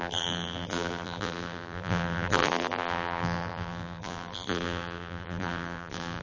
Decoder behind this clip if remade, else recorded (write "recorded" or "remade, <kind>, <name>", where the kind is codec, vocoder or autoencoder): remade, vocoder, BigVGAN v2